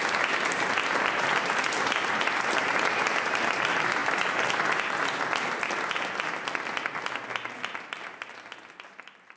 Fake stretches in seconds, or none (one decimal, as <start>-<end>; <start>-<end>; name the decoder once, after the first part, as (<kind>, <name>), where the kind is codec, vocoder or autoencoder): none

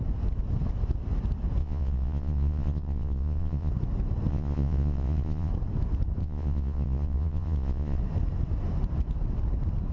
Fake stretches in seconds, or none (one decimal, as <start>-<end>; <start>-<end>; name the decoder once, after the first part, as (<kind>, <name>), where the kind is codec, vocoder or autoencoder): 1.6-3.7 (vocoder, Vocos); 4.3-5.5; 6.2-8.0

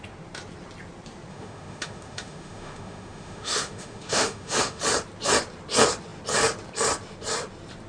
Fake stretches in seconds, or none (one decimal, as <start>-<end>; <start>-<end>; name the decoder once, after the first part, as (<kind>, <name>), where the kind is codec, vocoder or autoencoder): 1.3-4.8 (autoencoder, DAC-VAE)

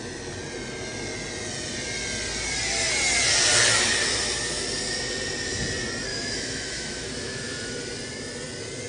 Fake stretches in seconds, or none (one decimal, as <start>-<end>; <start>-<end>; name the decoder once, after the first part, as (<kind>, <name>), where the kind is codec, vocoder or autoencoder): 6.1-7.8 (autoencoder, DAC-VAE)

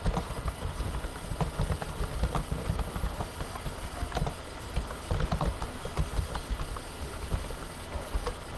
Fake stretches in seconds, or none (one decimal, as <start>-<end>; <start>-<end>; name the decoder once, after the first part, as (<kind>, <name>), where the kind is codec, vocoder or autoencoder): none

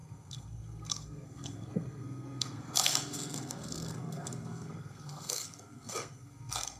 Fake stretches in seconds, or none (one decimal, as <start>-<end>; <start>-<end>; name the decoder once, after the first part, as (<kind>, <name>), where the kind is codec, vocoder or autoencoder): 0.0-6.8 (codec, SNAC)

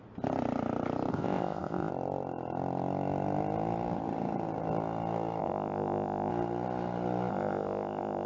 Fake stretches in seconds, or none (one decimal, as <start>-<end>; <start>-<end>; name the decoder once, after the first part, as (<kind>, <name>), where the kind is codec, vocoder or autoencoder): 1.1-1.9 (codec, ZipCodec); 5.4-6.3; 7.3-8.3